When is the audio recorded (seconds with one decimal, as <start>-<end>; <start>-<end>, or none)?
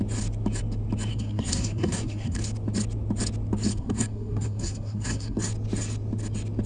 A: 0.0-1.1; 2.4-3.7; 5.4-6.7